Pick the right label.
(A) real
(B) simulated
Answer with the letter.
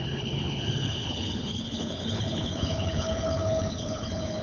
B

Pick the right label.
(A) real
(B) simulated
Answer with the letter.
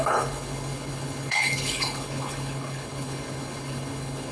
B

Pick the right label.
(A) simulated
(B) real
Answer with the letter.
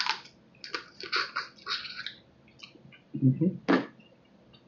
B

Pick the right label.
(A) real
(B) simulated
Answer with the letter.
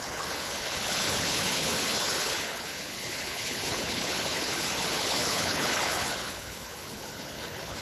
B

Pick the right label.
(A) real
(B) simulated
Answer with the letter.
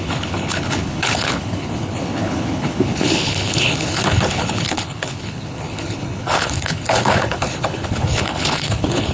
B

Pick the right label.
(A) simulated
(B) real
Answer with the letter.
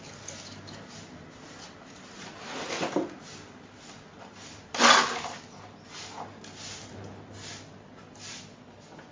B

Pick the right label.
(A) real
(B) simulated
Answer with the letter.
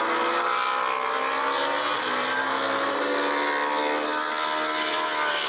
A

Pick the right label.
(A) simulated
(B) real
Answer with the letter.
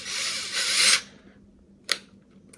B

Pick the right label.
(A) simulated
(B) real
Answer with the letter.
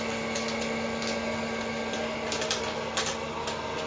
B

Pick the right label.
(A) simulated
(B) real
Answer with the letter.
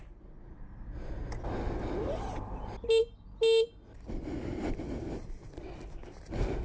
B